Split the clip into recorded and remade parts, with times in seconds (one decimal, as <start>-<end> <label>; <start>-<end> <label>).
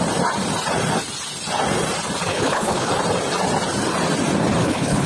0.0-2.3 recorded; 2.3-2.9 remade; 2.9-4.6 recorded; 4.6-5.1 remade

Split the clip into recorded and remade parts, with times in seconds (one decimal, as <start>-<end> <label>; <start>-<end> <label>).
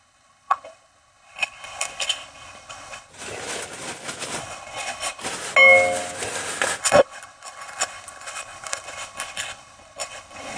0.0-3.1 remade; 3.1-4.4 recorded; 4.4-5.2 remade; 5.2-6.8 recorded; 6.8-10.6 remade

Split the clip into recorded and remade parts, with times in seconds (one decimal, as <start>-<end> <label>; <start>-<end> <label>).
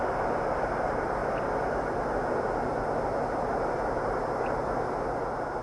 0.0-5.6 recorded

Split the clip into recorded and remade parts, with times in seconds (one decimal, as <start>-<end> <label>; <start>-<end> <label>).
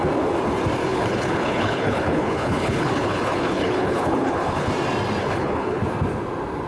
0.0-0.8 recorded; 0.8-4.7 remade; 4.7-5.2 recorded; 5.2-5.8 remade; 5.8-6.7 recorded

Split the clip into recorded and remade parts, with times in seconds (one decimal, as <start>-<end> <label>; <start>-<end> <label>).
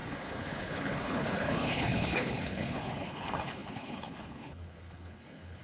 0.0-5.6 remade